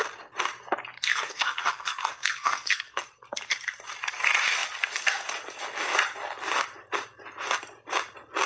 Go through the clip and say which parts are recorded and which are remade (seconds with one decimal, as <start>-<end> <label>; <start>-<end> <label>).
0.0-1.1 recorded; 1.1-3.0 remade; 3.0-8.5 recorded

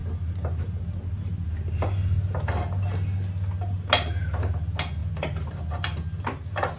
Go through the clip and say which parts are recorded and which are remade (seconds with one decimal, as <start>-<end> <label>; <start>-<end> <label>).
0.0-6.8 recorded

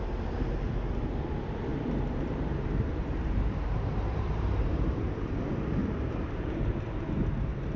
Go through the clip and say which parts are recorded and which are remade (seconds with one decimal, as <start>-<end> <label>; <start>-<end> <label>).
0.0-1.7 recorded; 1.7-5.3 remade; 5.3-5.8 recorded; 5.8-7.0 remade; 7.0-7.8 recorded

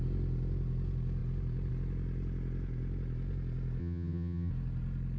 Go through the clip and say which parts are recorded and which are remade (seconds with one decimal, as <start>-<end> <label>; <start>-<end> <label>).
0.0-3.8 recorded; 3.8-4.5 remade; 4.5-5.2 recorded